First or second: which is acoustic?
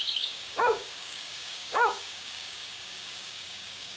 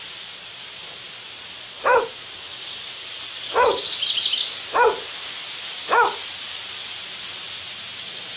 second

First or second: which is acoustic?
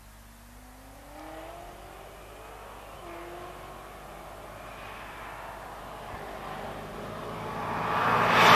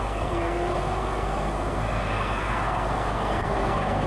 first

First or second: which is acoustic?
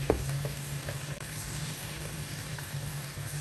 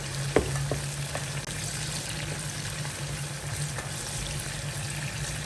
second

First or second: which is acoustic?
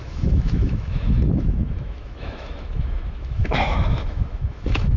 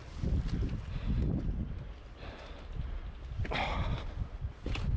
second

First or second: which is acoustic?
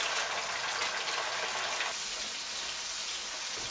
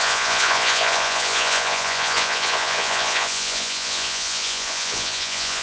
first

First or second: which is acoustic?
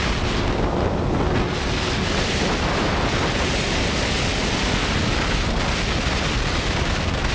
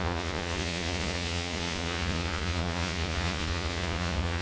first